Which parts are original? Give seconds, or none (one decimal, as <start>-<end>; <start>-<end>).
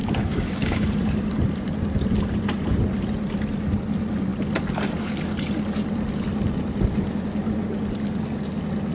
0.9-8.9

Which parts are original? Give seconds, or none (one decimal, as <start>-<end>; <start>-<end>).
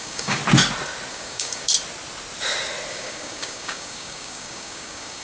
0.4-1.1; 1.7-2.9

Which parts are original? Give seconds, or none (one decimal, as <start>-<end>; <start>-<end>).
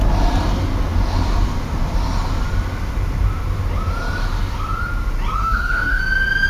0.0-5.4; 6.0-6.5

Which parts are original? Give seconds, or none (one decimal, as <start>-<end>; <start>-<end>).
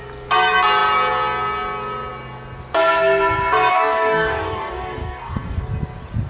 0.0-3.7; 5.6-6.3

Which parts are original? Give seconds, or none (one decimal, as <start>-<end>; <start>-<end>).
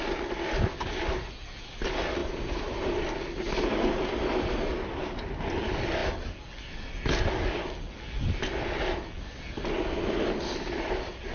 0.0-11.3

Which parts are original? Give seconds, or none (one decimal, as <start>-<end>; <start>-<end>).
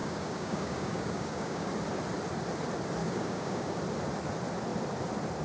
1.7-3.0; 3.8-5.4